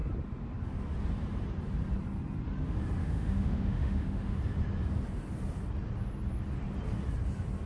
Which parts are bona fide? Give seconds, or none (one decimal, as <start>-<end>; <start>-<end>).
0.0-3.0; 4.4-7.7